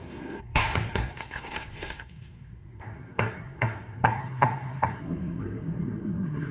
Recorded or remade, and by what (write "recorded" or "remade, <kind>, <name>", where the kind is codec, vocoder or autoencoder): remade, codec, SNAC